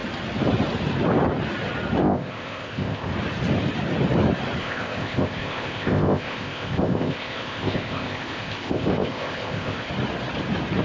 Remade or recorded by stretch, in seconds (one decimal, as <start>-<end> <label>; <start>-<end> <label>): 0.0-2.0 recorded; 2.0-3.1 remade; 3.1-4.6 recorded; 4.6-9.9 remade; 9.9-10.8 recorded